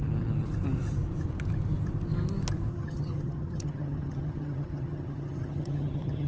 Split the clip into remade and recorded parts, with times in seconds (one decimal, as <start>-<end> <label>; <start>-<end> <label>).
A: 0.0-2.7 recorded; 2.7-6.3 remade